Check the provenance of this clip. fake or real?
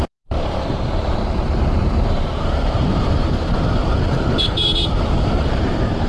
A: fake